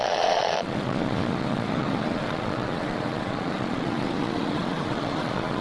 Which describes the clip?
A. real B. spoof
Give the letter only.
B